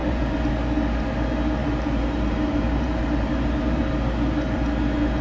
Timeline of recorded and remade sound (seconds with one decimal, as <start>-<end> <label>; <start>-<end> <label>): 0.0-0.5 remade; 0.5-1.6 recorded; 1.6-3.9 remade; 3.9-5.2 recorded